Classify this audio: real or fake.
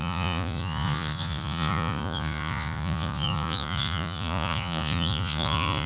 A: fake